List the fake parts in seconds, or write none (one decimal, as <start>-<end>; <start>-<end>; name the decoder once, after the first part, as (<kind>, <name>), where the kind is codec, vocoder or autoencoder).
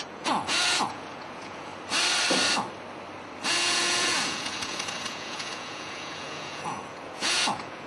0.0-1.7 (vocoder, Vocos); 3.5-7.9